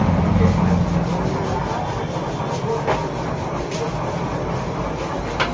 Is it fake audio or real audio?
real